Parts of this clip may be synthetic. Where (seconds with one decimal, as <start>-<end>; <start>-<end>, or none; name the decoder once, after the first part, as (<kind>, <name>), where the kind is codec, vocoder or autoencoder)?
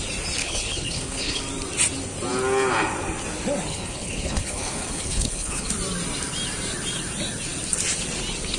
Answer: 0.4-1.4 (codec, HILCodec); 3.7-5.7